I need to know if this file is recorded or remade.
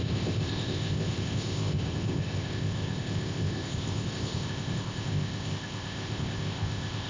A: remade